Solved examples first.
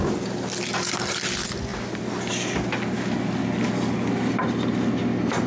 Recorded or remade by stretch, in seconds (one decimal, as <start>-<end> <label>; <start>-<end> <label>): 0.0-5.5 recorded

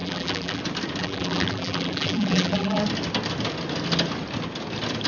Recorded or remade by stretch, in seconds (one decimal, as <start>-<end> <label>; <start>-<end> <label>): 0.0-0.6 remade; 0.6-1.0 recorded; 1.0-2.8 remade; 2.8-5.1 recorded

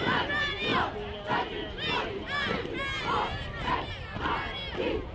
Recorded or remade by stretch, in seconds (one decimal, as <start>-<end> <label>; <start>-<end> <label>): 0.0-5.1 recorded

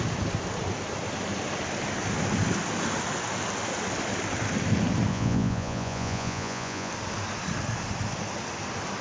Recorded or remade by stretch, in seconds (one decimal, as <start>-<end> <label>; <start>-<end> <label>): 0.0-5.1 recorded; 5.1-6.9 remade; 6.9-9.0 recorded